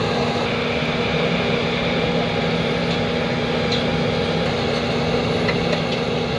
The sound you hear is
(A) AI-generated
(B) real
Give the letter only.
B